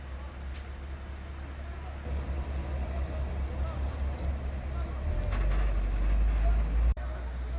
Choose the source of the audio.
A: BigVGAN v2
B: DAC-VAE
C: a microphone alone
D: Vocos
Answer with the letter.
C